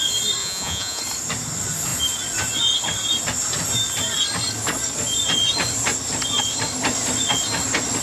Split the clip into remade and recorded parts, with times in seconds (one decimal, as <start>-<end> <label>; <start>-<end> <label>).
0.0-0.4 recorded; 0.4-1.0 remade; 1.0-8.0 recorded